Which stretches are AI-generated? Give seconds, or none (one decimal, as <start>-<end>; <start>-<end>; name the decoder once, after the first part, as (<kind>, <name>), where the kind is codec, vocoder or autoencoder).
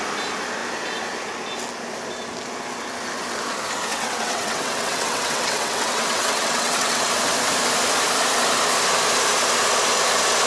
3.9-7.1 (vocoder, WaveNeXt)